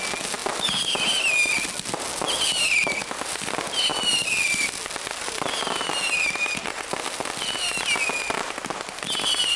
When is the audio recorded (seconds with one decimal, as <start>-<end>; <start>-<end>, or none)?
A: 0.0-9.6

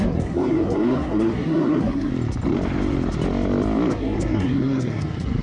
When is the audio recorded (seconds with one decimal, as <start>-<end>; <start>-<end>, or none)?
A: 2.1-3.9

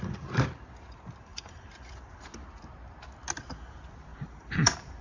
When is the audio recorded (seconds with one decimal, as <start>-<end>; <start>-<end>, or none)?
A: 0.0-1.3; 1.9-4.1